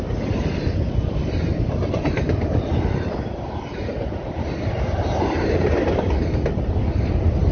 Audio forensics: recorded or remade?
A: recorded